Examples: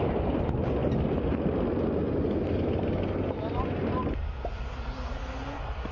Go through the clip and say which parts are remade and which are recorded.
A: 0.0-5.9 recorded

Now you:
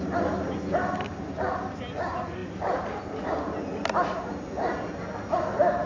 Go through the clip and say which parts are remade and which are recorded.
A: 0.0-5.9 recorded

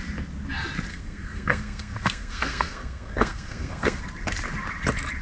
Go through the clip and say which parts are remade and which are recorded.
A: 0.0-0.9 recorded; 0.9-4.0 remade; 4.0-5.2 recorded

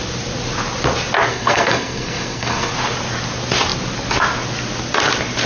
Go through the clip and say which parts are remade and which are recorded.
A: 0.0-1.3 recorded; 1.3-2.7 remade; 2.7-5.5 recorded

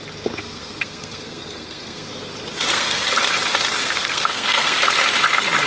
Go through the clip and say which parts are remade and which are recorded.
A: 0.0-0.4 recorded; 0.4-2.1 remade; 2.1-2.7 recorded; 2.7-3.2 remade; 3.2-3.8 recorded; 3.8-4.9 remade; 4.9-5.7 recorded

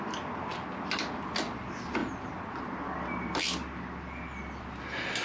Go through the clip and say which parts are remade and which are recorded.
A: 0.0-5.2 recorded